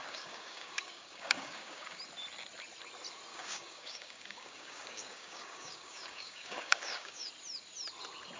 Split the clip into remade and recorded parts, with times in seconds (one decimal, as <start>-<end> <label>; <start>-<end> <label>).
0.0-2.0 remade; 2.0-3.3 recorded; 3.3-7.3 remade; 7.3-8.4 recorded